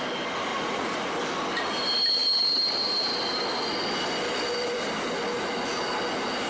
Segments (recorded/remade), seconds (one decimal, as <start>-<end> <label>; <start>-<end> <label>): 0.0-0.5 recorded; 0.5-1.1 remade; 1.1-6.5 recorded